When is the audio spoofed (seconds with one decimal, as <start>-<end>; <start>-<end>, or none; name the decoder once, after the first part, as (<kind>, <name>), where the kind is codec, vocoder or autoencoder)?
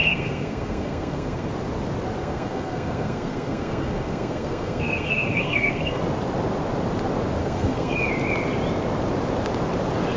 0.0-1.5 (codec, SNAC); 2.2-6.0; 7.4-8.1